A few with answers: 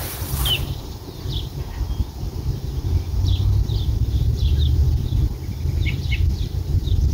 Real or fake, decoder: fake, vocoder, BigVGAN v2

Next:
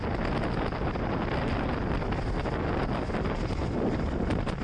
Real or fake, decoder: real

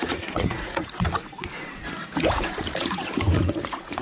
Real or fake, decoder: fake, vocoder, Vocos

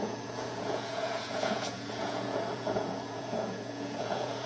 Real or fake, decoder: fake, vocoder, Vocos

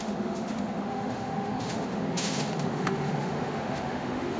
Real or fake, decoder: fake, autoencoder, DAC-VAE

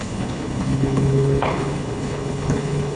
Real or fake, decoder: fake, codec, HILCodec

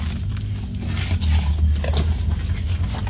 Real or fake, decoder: real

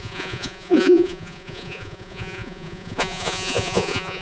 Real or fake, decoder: fake, vocoder, Vocos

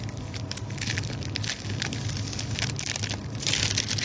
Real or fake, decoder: real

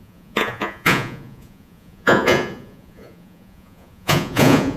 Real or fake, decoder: fake, vocoder, Vocos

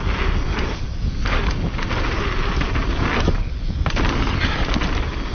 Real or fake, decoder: real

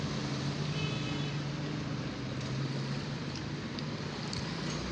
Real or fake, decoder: real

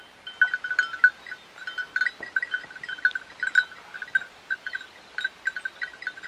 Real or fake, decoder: real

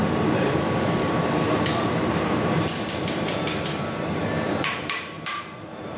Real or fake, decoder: fake, vocoder, BigVGAN v2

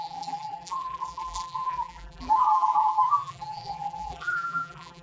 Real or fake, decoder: fake, vocoder, BigVGAN v2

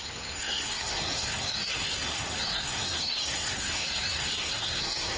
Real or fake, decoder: fake, codec, SNAC